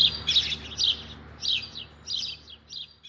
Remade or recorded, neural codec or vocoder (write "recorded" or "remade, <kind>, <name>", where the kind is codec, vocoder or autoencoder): recorded